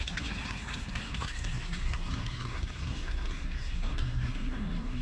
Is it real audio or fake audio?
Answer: fake